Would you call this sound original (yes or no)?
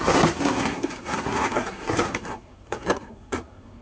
no